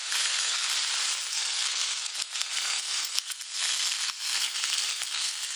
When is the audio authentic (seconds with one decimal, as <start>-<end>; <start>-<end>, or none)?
0.7-1.3